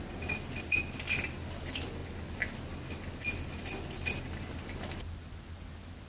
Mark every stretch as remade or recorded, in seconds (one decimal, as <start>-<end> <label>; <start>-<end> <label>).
0.0-6.1 recorded

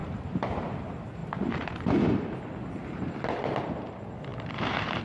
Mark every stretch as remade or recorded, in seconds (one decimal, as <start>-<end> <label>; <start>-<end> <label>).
0.0-0.7 remade; 0.7-1.2 recorded; 1.2-2.4 remade; 2.4-2.8 recorded; 2.8-3.7 remade; 3.7-4.3 recorded; 4.3-5.0 remade